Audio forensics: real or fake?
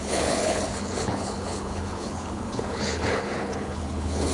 fake